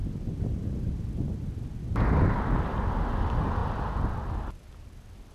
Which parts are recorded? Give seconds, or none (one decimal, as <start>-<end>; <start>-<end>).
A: 0.0-5.3